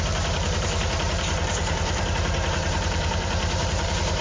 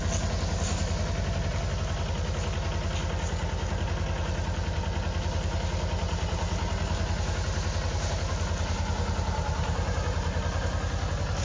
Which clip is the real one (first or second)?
second